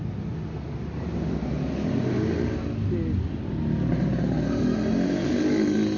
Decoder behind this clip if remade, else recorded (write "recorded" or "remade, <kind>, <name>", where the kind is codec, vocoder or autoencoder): recorded